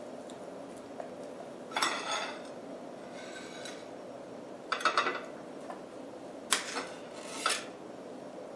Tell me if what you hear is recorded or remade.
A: recorded